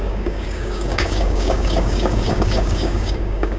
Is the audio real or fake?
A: fake